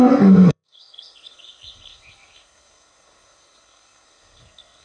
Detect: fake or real fake